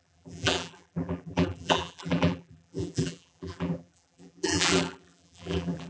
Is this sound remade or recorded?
remade